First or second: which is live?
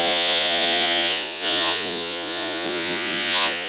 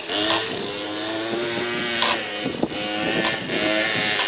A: second